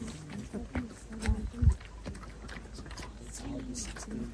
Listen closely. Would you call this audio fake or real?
real